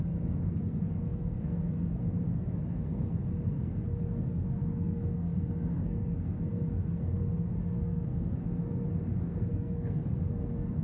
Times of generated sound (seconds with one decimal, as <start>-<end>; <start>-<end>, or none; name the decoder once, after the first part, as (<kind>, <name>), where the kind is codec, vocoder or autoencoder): 0.0-10.8 (codec, SNAC)